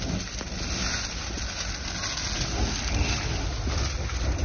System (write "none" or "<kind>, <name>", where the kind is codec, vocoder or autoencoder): none